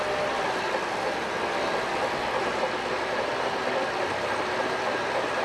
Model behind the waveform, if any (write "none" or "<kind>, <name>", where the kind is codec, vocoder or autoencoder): none